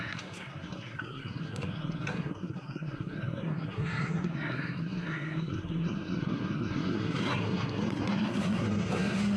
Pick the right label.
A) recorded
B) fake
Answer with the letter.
B